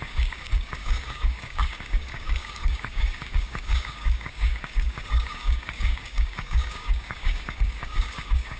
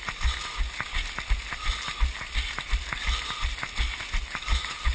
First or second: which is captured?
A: second